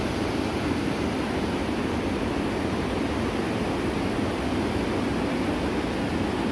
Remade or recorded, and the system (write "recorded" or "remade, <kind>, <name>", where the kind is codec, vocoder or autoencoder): recorded